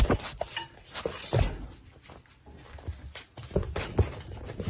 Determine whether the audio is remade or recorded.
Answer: recorded